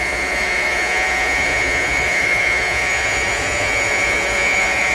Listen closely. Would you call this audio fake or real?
fake